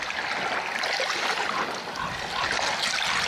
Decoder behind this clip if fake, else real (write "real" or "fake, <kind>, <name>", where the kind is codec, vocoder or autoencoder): real